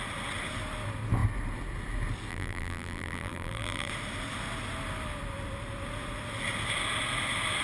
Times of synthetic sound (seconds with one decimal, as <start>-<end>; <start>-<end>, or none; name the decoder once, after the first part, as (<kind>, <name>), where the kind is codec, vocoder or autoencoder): 2.3-3.9 (vocoder, BigVGAN v2)